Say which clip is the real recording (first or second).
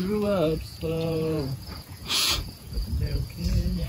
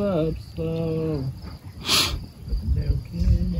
second